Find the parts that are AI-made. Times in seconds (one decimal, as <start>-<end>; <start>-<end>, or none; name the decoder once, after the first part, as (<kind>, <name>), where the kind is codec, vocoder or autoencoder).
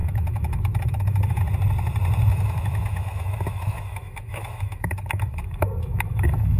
0.0-1.4 (autoencoder, DAC-VAE); 2.3-6.6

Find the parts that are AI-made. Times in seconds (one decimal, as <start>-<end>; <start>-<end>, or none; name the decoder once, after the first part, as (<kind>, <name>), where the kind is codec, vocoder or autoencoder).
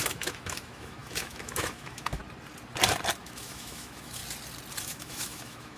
0.0-2.2 (autoencoder, DAC-VAE); 3.2-4.2; 4.8-5.8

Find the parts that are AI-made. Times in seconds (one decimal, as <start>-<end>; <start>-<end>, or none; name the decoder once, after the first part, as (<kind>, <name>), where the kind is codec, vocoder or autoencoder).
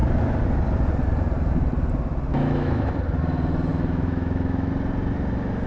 2.3-2.9 (autoencoder, DAC-VAE); 3.7-4.7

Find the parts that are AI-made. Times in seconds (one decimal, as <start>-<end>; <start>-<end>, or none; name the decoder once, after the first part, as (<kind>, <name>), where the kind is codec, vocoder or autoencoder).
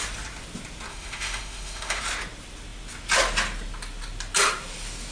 0.9-2.0 (autoencoder, DAC-VAE)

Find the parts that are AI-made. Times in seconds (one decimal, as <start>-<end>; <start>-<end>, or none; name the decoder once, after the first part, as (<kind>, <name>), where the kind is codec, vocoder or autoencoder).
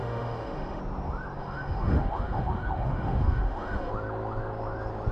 0.0-0.8 (autoencoder, DAC-VAE); 1.4-3.9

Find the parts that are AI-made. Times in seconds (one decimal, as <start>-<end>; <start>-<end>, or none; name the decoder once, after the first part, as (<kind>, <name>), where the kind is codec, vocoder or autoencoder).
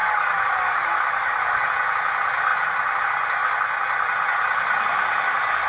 0.0-1.6 (autoencoder, DAC-VAE)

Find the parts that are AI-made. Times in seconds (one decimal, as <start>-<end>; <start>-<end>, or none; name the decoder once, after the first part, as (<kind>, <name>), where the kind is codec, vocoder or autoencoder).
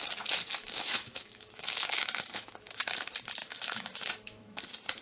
0.6-2.8 (autoencoder, DAC-VAE); 3.4-4.6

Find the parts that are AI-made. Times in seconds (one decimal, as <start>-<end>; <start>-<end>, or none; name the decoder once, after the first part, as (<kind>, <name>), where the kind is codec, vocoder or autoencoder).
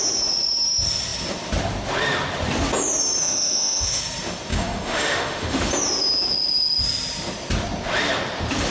3.2-4.0 (autoencoder, DAC-VAE); 4.5-5.6